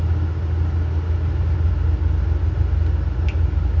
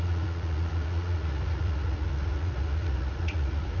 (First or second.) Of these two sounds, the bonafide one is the first